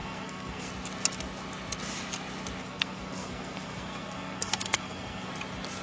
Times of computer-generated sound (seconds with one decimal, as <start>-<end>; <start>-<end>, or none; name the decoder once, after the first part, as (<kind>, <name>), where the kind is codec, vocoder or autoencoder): 0.0-0.7 (codec, SNAC); 2.6-5.3